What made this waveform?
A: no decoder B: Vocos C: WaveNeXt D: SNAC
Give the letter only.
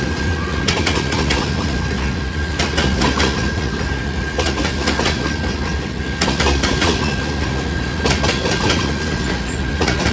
B